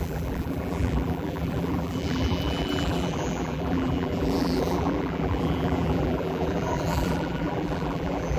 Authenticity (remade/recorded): remade